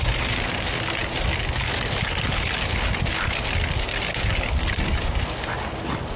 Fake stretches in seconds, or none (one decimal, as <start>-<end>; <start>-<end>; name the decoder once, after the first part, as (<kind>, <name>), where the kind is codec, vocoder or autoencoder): none